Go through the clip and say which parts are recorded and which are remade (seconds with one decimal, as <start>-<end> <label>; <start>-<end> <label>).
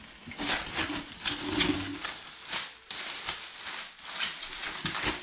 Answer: 0.0-5.2 recorded